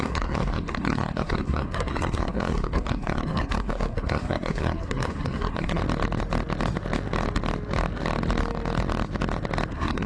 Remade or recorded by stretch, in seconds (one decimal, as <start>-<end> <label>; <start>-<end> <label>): 0.0-5.8 remade; 5.8-9.7 recorded; 9.7-10.1 remade